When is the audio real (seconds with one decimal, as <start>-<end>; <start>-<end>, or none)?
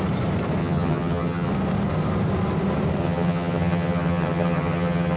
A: 0.0-0.6; 1.5-3.0